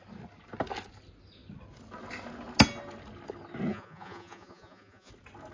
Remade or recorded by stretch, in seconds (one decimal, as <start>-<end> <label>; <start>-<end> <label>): 0.0-3.7 recorded; 3.7-5.1 remade; 5.1-5.5 recorded

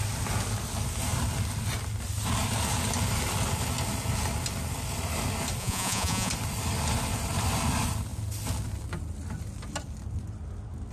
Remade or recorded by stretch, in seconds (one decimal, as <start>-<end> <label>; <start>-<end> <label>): 0.0-5.6 recorded; 5.6-6.3 remade; 6.3-10.9 recorded

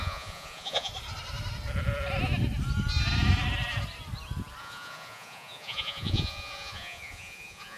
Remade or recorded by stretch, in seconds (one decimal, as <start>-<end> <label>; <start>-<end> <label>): 0.0-0.9 remade; 0.9-4.6 recorded; 4.6-7.8 remade